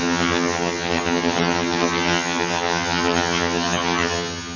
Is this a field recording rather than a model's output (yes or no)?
no